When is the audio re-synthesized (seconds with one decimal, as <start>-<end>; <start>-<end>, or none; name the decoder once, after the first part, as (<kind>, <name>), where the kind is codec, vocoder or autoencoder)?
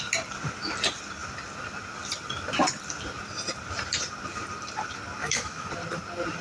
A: 5.2-5.7 (autoencoder, DAC-VAE)